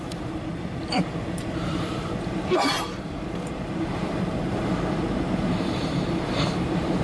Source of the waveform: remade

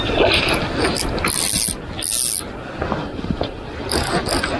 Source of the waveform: recorded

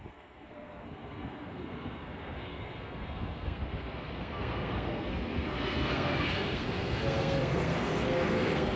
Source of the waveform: remade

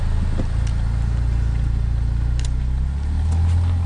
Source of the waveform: recorded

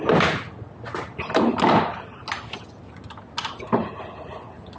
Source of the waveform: recorded